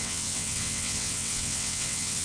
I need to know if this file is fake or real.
fake